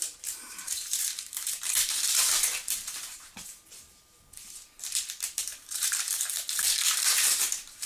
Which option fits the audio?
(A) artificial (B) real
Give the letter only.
A